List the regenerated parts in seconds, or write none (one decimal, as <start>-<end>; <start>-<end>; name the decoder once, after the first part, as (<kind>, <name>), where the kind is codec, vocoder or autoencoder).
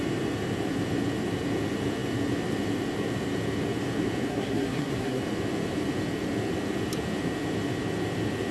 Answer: 4.3-5.2 (codec, SNAC)